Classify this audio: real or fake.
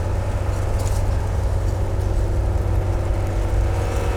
real